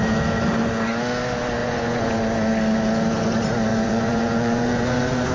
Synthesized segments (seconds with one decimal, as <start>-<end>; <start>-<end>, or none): 1.6-2.1; 3.7-5.3